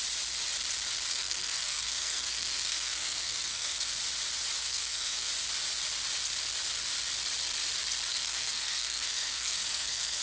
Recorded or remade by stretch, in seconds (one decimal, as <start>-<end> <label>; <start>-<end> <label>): 0.0-1.1 recorded; 1.1-4.0 remade; 4.0-4.6 recorded; 4.6-5.3 remade; 5.3-8.1 recorded; 8.1-10.2 remade

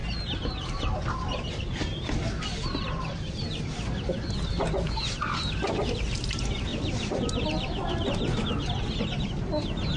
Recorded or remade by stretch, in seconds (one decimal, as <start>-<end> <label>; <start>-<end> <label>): 0.0-6.7 recorded; 6.7-8.5 remade; 8.5-10.0 recorded

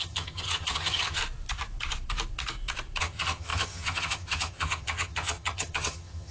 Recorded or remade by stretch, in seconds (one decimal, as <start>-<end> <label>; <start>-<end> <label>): 0.0-1.2 remade; 1.2-3.0 recorded; 3.0-6.3 remade

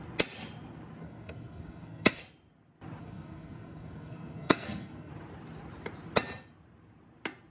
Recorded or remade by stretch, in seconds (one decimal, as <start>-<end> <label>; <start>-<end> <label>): 0.0-1.0 recorded; 1.0-2.2 remade; 2.2-3.0 recorded; 3.0-5.1 remade; 5.1-7.5 recorded

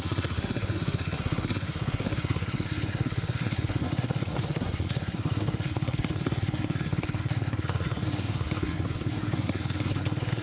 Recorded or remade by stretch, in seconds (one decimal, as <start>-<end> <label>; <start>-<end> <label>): 0.0-10.4 remade

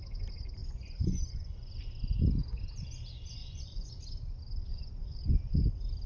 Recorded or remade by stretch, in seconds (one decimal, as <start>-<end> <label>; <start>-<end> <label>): 0.0-0.6 recorded; 0.6-1.9 remade; 1.9-3.4 recorded; 3.4-3.9 remade; 3.9-4.7 recorded; 4.7-5.6 remade; 5.6-6.1 recorded

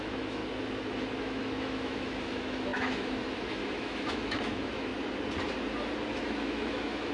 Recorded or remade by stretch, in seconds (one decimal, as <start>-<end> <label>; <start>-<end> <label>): 0.0-0.4 remade; 0.4-1.2 recorded; 1.2-4.9 remade; 4.9-6.2 recorded; 6.2-7.1 remade

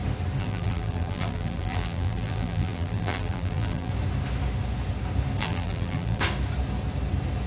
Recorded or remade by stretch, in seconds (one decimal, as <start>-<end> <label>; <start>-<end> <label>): 0.0-0.4 recorded; 0.4-3.9 remade; 3.9-5.4 recorded; 5.4-6.2 remade; 6.2-7.5 recorded